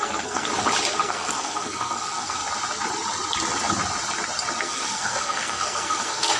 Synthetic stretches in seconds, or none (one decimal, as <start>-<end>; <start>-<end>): 0.0-0.5; 1.0-2.4; 4.6-6.4